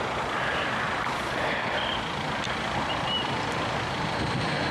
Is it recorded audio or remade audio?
recorded